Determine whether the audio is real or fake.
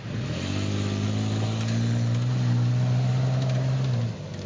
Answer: real